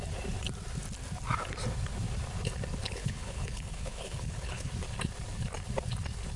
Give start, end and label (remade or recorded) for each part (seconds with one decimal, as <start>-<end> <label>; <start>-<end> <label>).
0.0-2.8 recorded; 2.8-4.7 remade; 4.7-6.4 recorded